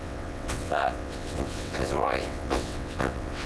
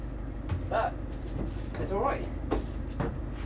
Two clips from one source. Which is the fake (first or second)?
first